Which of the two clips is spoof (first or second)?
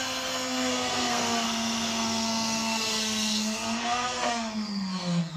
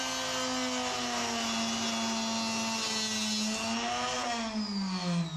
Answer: first